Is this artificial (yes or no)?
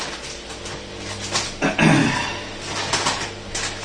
no